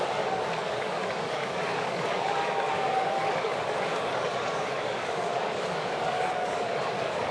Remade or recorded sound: remade